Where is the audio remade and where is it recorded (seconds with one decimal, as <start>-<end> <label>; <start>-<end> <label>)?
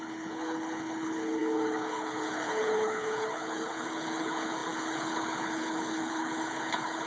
0.0-7.1 remade